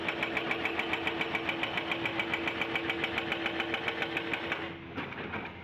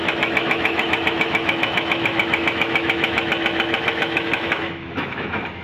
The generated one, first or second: second